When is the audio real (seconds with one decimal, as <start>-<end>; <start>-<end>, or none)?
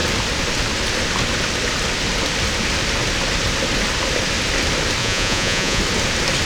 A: 0.0-5.0; 5.8-6.5